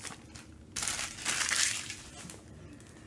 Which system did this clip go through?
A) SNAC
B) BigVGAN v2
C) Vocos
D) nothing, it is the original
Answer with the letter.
D